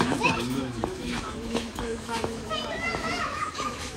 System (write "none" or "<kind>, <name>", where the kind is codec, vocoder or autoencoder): autoencoder, DAC-VAE